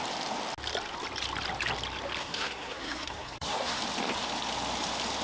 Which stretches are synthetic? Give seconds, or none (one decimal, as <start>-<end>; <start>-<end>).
2.2-3.8